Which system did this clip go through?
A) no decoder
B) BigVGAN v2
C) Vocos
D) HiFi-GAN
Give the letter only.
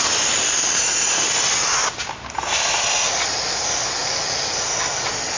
A